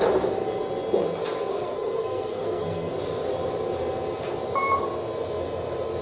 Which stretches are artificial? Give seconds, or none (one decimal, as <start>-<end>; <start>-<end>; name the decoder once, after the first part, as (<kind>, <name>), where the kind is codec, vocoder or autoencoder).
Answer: 1.5-2.9 (codec, SNAC)